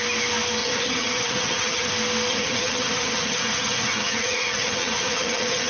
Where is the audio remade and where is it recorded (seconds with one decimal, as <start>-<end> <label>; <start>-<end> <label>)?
0.0-0.6 recorded; 0.6-1.9 remade; 1.9-2.3 recorded; 2.3-5.7 remade